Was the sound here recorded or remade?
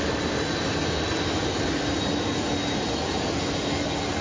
recorded